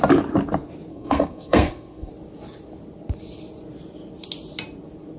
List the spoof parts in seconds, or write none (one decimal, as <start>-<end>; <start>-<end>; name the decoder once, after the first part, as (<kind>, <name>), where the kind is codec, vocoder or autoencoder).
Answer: 0.9-2.1 (codec, SNAC)